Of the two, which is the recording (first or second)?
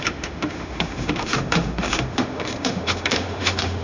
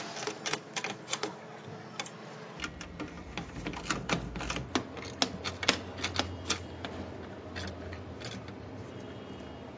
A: second